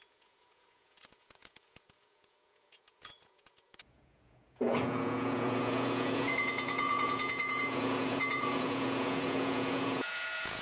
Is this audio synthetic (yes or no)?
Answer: yes